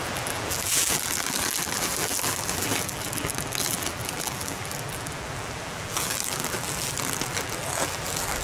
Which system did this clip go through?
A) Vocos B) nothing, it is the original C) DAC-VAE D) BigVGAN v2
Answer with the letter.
D